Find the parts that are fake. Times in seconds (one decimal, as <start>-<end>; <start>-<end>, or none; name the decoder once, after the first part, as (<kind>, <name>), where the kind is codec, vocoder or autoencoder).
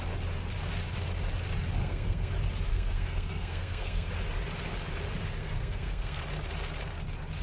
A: 1.8-2.3 (codec, SNAC); 2.7-4.1; 5.4-6.2